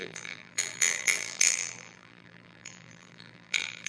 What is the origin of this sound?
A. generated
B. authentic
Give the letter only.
A